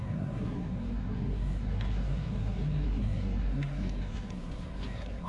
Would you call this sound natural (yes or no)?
no